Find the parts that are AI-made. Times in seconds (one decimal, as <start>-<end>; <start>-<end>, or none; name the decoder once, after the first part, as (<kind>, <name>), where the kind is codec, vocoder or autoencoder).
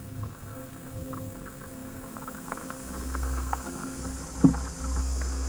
0.0-4.0 (codec, SNAC); 5.0-5.5